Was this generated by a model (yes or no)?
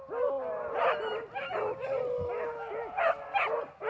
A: no